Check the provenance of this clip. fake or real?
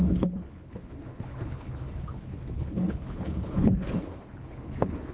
fake